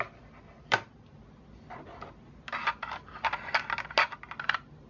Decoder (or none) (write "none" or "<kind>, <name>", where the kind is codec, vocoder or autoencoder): none